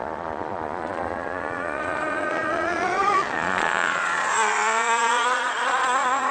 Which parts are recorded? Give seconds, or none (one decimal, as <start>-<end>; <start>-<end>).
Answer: none